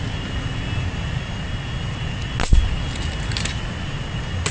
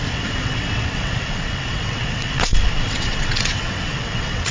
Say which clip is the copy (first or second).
second